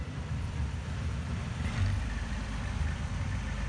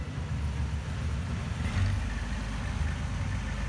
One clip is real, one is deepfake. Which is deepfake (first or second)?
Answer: first